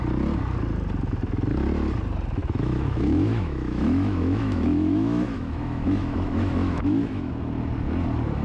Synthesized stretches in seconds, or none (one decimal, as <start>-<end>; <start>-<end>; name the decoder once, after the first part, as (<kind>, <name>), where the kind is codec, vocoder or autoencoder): 2.4-7.3 (autoencoder, DAC-VAE)